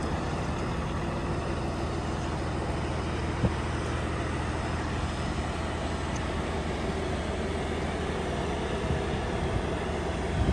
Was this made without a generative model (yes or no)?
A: yes